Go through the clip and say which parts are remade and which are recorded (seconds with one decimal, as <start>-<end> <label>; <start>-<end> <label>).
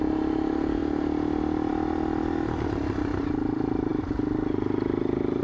0.0-5.4 recorded